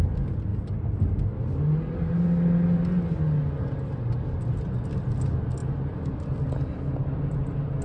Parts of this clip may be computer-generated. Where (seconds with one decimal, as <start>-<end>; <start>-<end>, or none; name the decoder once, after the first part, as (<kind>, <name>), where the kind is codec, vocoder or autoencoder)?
none